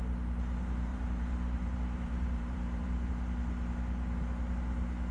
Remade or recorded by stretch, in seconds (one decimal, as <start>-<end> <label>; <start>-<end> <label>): 0.0-0.9 recorded; 0.9-3.1 remade; 3.1-5.1 recorded

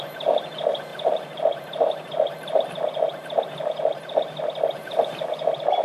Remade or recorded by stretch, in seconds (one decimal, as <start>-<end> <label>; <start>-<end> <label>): 0.0-0.9 recorded; 0.9-4.0 remade; 4.0-4.8 recorded; 4.8-5.3 remade; 5.3-5.8 recorded

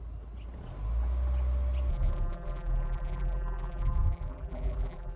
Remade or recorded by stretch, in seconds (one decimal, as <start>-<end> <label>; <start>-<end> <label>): 0.0-1.9 recorded; 1.9-5.2 remade